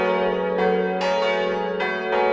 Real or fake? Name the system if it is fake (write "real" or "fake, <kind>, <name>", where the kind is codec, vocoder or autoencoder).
real